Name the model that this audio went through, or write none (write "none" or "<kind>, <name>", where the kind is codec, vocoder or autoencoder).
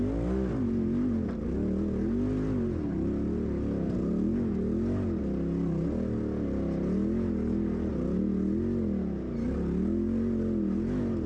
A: none